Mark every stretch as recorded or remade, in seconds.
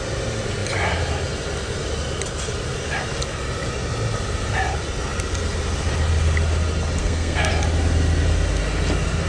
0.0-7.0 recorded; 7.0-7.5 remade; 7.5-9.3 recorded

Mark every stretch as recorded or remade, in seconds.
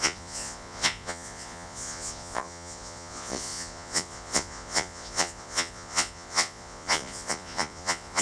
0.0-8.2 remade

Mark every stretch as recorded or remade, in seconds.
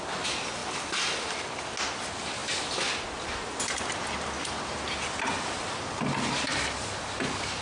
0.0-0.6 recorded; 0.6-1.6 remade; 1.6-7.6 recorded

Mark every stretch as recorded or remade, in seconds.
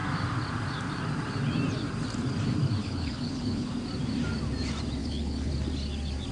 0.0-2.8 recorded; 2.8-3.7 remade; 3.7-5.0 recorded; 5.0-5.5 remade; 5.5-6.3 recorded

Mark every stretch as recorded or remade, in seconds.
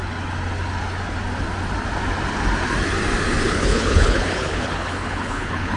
0.0-3.5 recorded; 3.5-5.8 remade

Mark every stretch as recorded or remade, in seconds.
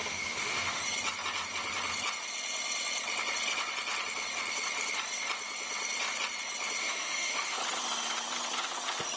0.0-0.8 remade; 0.8-6.8 recorded; 6.8-7.6 remade; 7.6-9.2 recorded